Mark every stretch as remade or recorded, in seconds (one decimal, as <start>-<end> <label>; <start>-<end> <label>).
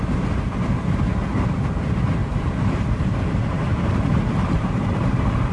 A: 0.0-2.2 recorded; 2.2-3.1 remade; 3.1-3.7 recorded; 3.7-5.1 remade; 5.1-5.5 recorded